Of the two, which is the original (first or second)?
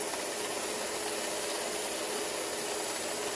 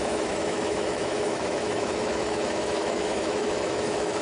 first